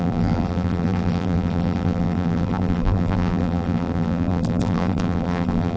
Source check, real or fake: fake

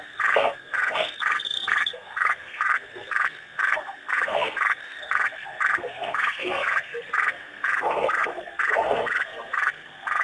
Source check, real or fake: fake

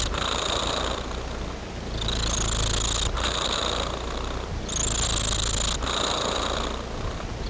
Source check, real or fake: real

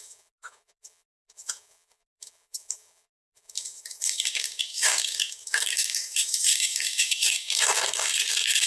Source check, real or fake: fake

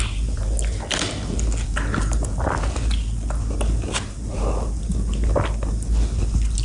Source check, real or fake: real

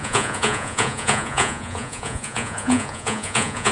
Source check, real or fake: fake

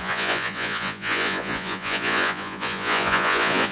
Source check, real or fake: fake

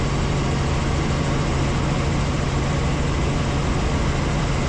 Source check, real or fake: real